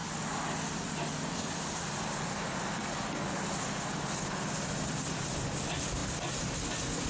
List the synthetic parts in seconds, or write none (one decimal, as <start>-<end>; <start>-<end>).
none